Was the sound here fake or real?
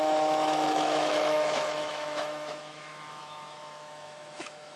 fake